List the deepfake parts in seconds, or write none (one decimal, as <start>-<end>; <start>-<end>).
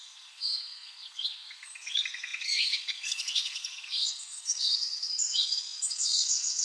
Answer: 0.0-6.6